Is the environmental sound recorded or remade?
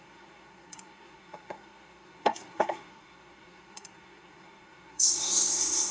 remade